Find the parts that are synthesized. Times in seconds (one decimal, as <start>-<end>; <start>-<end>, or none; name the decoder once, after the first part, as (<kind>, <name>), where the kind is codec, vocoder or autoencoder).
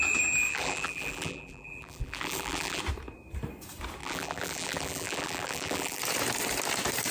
0.5-2.8 (vocoder, BigVGAN v2); 4.0-6.0